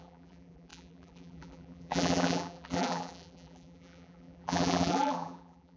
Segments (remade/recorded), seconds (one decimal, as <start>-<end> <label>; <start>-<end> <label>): 0.0-5.8 remade